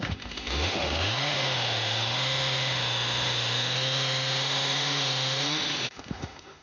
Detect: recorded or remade remade